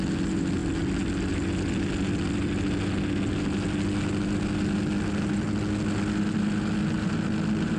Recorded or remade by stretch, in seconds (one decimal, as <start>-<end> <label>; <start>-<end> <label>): 0.0-7.8 recorded

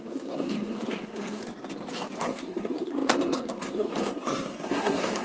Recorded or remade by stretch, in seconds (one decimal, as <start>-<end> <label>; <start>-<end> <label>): 0.0-1.4 remade; 1.4-2.2 recorded; 2.2-5.2 remade

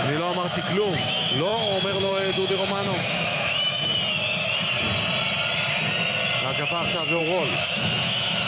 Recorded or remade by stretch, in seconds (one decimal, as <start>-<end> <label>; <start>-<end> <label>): 0.0-3.9 remade; 3.9-7.2 recorded; 7.2-8.5 remade